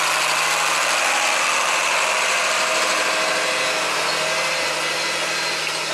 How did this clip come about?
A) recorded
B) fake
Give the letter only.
A